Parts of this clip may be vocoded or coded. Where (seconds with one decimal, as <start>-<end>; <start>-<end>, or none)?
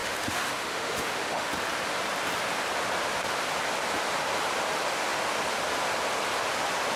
0.0-1.5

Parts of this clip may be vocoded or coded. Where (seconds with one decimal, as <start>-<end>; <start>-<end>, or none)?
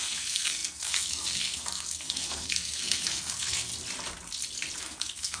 0.0-3.7; 4.8-5.4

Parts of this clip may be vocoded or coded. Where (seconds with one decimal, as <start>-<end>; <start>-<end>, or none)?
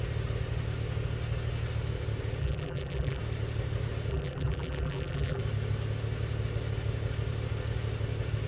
2.4-3.2; 4.1-5.4